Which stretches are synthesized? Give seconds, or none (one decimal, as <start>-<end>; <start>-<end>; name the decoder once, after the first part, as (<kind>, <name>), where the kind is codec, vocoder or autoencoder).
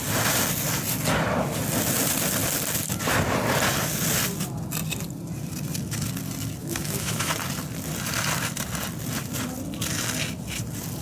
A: 6.6-7.3 (autoencoder, DAC-VAE)